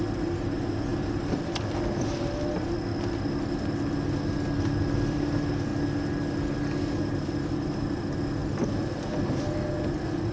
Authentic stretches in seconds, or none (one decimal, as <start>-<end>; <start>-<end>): 0.0-10.3